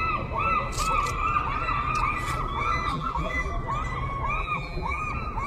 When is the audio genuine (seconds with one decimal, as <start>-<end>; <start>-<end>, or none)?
0.0-2.9; 3.5-4.4; 5.0-5.5